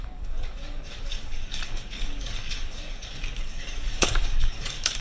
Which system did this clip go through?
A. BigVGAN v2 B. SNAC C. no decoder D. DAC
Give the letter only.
D